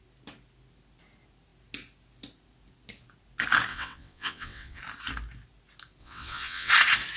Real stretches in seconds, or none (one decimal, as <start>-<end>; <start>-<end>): 0.0-3.7; 4.8-6.0; 6.7-7.2